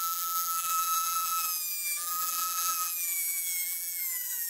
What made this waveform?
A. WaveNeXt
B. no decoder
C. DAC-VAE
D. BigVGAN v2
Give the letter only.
D